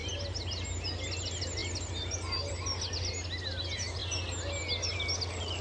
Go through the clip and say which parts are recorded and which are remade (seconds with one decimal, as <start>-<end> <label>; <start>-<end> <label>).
0.0-1.6 recorded; 1.6-2.5 remade; 2.5-5.6 recorded